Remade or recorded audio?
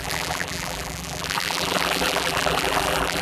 remade